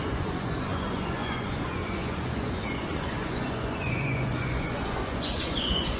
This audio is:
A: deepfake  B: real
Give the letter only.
A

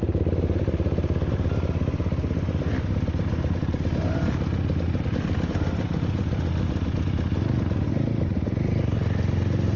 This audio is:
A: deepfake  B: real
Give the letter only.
B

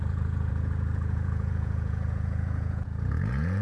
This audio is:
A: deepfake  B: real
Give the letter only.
A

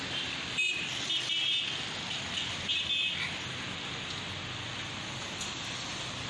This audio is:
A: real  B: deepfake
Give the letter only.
A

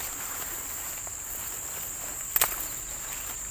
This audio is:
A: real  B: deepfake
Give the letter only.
A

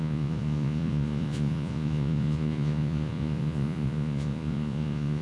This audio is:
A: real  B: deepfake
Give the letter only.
B